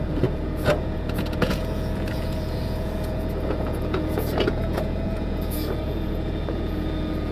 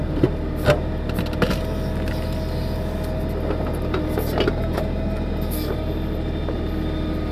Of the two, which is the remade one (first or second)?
first